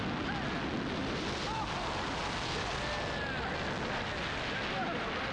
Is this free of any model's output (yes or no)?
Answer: yes